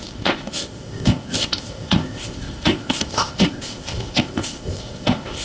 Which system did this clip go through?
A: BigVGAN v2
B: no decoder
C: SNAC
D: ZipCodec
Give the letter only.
D